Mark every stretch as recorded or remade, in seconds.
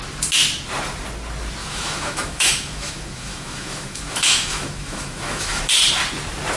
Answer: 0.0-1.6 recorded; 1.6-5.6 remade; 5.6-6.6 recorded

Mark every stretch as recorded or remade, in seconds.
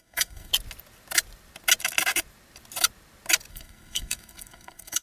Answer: 0.0-0.5 remade; 0.5-3.5 recorded; 3.5-5.0 remade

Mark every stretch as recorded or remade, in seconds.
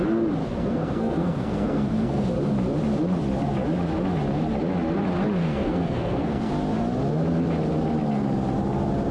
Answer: 0.0-0.4 recorded; 0.4-2.3 remade; 2.3-5.4 recorded; 5.4-6.5 remade; 6.5-9.1 recorded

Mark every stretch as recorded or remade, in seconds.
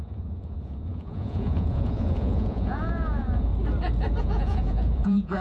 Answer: 0.0-3.5 remade; 3.5-4.2 recorded; 4.2-5.4 remade